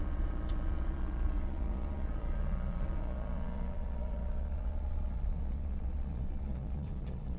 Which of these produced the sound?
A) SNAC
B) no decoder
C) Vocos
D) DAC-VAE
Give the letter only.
C